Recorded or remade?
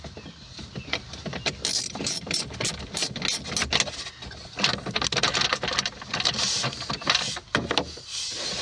recorded